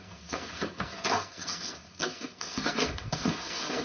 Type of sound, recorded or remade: remade